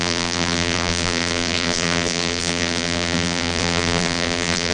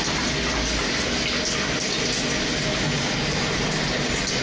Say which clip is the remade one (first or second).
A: first